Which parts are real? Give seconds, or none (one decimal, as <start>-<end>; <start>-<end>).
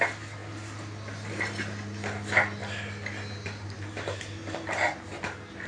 0.0-5.7